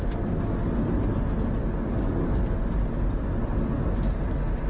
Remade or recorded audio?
recorded